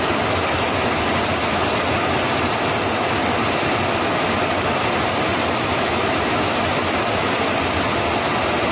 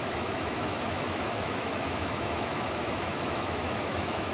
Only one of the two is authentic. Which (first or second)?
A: first